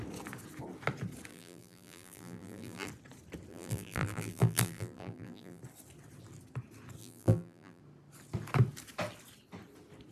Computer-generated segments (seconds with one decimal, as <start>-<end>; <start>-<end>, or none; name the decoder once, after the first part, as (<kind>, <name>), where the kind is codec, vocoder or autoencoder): 1.3-2.9 (vocoder, BigVGAN v2); 3.5-5.6; 7.0-7.8